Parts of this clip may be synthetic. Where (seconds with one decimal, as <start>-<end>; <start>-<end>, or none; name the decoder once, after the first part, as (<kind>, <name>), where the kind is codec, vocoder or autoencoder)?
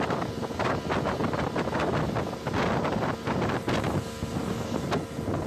none